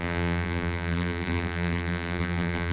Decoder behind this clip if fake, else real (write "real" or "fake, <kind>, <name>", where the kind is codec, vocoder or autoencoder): fake, vocoder, BigVGAN v2